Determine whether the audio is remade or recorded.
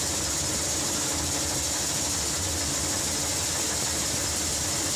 recorded